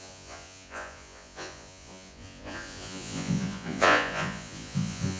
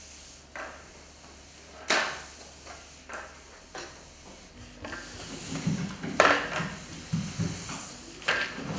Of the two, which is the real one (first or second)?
second